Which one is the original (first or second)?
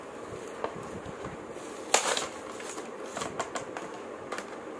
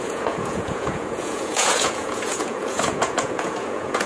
first